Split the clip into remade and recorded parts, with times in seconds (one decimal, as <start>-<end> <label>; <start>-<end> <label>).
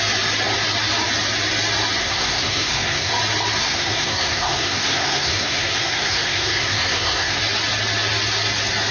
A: 0.0-2.0 recorded; 2.0-3.1 remade; 3.1-3.6 recorded; 3.6-7.4 remade; 7.4-8.9 recorded